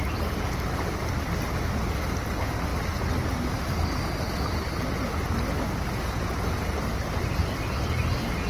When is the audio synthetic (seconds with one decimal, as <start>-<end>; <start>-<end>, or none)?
none